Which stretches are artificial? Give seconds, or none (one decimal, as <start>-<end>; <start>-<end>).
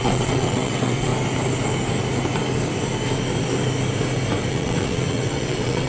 0.0-1.1; 4.5-5.9